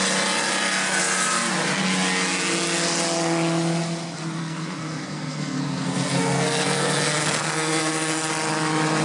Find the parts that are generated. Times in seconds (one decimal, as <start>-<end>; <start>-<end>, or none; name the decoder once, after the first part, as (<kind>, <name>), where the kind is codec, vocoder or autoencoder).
4.4-8.3 (codec, SNAC)